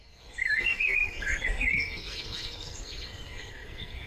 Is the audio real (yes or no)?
no